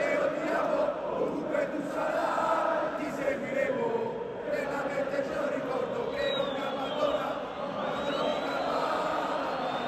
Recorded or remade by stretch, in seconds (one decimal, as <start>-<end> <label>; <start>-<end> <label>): 0.0-4.3 recorded; 4.3-5.2 remade; 5.2-8.3 recorded; 8.3-9.4 remade; 9.4-9.9 recorded